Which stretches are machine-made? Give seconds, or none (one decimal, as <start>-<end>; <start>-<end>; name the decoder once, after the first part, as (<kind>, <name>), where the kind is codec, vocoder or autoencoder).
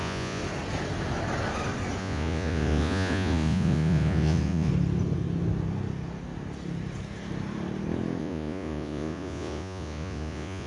0.0-0.4 (vocoder, Vocos); 2.0-4.7; 8.2-10.7